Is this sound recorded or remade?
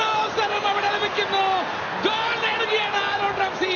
recorded